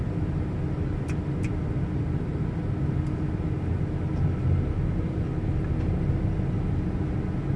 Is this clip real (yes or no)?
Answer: yes